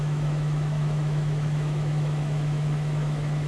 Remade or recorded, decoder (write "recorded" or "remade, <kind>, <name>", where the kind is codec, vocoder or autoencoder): remade, autoencoder, DAC-VAE